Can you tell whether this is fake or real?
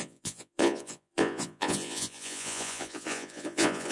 fake